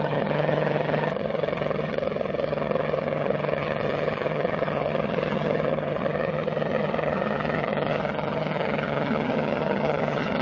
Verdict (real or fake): fake